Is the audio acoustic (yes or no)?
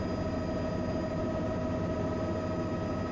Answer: yes